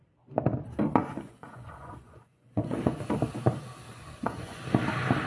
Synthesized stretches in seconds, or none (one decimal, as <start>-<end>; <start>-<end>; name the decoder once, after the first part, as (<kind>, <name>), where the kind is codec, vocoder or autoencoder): 1.0-3.0 (vocoder, Vocos); 3.9-4.6